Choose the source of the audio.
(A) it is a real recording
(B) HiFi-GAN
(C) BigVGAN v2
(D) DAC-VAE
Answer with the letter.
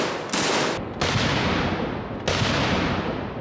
A